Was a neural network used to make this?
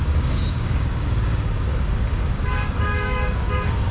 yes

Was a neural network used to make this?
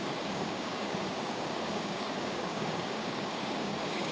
yes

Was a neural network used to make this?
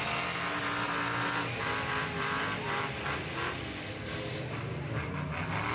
no